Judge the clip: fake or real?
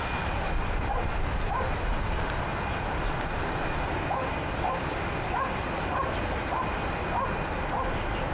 real